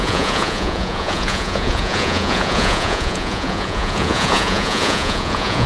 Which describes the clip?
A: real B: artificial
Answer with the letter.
B